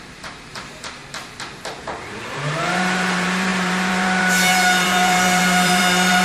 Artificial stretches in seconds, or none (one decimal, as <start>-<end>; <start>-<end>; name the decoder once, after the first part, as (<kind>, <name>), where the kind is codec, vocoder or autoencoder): 0.0-1.0 (vocoder, BigVGAN v2); 1.8-6.2